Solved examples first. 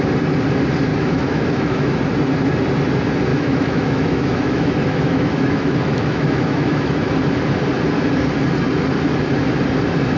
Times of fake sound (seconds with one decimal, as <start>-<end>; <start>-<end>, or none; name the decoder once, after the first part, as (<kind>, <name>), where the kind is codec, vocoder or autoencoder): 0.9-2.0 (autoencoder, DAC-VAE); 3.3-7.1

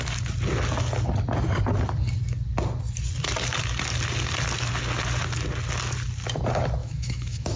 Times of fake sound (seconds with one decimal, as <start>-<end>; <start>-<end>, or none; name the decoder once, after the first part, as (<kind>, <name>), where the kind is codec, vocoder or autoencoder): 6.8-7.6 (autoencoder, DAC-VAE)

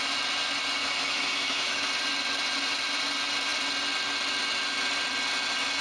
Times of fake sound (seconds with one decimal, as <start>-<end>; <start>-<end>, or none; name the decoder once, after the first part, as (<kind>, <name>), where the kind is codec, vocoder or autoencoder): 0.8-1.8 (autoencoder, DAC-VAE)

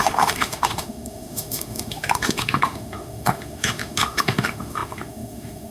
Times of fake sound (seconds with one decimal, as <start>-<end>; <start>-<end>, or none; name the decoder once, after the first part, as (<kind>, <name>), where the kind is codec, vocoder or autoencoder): 0.0-5.7 (autoencoder, DAC-VAE)

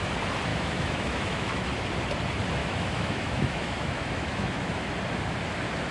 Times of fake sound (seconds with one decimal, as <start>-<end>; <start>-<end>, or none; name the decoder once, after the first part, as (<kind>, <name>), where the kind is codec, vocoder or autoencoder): 0.5-1.7 (autoencoder, DAC-VAE); 2.6-4.9

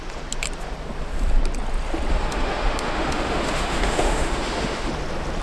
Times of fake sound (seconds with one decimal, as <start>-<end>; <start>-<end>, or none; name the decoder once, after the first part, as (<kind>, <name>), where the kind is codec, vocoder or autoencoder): 2.1-4.9 (autoencoder, DAC-VAE)

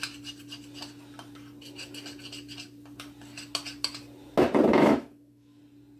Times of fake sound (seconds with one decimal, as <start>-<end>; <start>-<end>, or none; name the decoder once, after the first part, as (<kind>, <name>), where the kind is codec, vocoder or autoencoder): 4.7-5.6 (autoencoder, DAC-VAE)